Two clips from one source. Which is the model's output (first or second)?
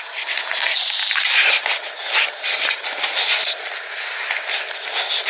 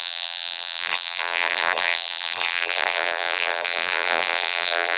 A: second